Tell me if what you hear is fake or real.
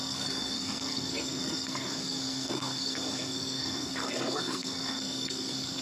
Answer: fake